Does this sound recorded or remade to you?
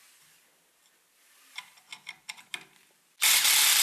recorded